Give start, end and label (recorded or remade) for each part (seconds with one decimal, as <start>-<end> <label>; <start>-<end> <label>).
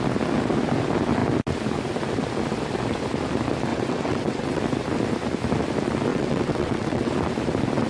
0.0-3.7 recorded; 3.7-4.6 remade; 4.6-6.1 recorded; 6.1-7.1 remade; 7.1-7.9 recorded